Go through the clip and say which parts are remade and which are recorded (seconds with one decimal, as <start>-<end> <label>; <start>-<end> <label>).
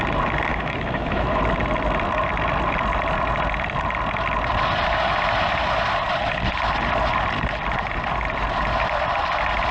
0.0-0.5 recorded; 0.5-1.4 remade; 1.4-9.7 recorded